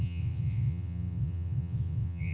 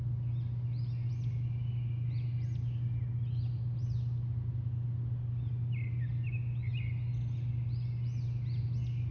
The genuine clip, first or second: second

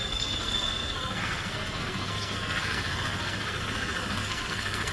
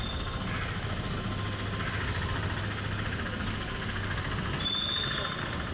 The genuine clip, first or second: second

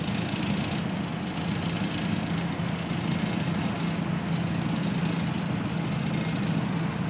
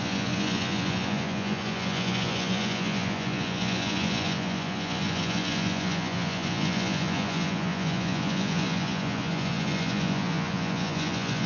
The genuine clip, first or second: first